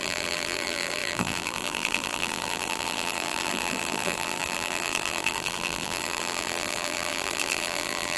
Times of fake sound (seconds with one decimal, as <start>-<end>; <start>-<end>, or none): 0.0-8.2